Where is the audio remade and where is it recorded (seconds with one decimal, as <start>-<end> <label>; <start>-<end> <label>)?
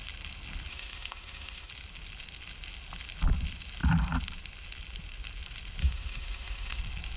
0.0-0.7 recorded; 0.7-1.7 remade; 1.7-5.8 recorded; 5.8-6.8 remade; 6.8-7.2 recorded